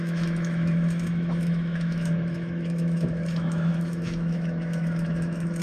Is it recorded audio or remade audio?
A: remade